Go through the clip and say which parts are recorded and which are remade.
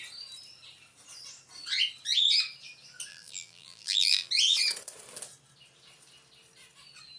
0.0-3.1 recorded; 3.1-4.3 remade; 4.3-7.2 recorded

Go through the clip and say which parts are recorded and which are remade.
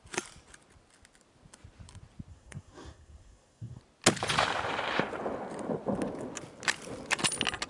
0.0-2.3 recorded; 2.3-3.8 remade; 3.8-7.7 recorded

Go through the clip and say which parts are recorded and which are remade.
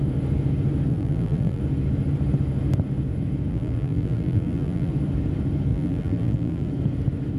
0.0-0.9 recorded; 0.9-1.6 remade; 1.6-3.5 recorded; 3.5-4.9 remade; 4.9-5.7 recorded; 5.7-6.7 remade; 6.7-7.4 recorded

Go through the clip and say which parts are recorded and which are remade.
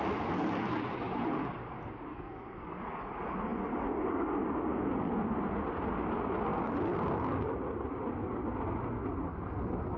0.0-2.1 recorded; 2.1-2.8 remade; 2.8-10.0 recorded